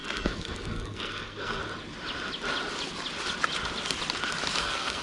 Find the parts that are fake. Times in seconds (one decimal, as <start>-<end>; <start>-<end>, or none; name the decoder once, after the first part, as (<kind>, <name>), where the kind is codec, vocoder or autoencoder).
0.0-1.6 (codec, SNAC); 4.6-5.0